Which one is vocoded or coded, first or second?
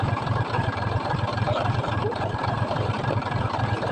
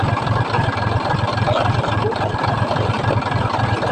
first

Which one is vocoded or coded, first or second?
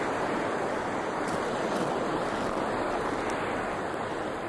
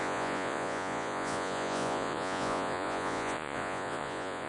second